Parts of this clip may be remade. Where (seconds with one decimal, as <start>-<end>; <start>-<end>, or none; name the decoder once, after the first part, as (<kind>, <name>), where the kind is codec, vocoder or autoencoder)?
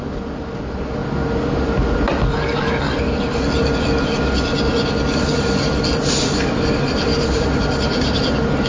7.1-8.2 (vocoder, BigVGAN v2)